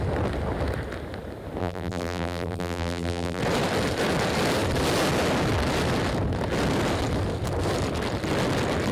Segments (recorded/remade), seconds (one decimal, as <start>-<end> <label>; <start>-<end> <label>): 0.0-1.6 recorded; 1.6-3.4 remade; 3.4-8.9 recorded